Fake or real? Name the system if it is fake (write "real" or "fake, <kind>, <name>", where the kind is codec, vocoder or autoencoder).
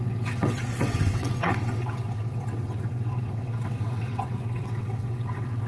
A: fake, vocoder, WaveNeXt